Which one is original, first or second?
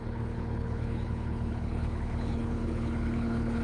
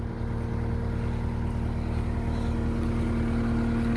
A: second